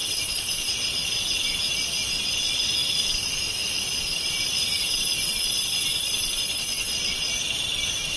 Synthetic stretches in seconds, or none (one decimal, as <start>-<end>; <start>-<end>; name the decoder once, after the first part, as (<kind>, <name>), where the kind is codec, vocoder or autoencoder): 2.8-6.4 (vocoder, BigVGAN v2)